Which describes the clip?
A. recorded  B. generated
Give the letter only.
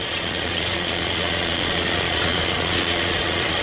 B